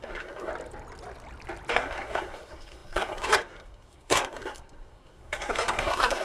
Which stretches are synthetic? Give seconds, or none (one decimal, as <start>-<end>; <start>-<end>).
0.0-0.5; 1.7-6.2